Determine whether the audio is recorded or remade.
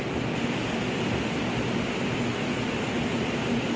recorded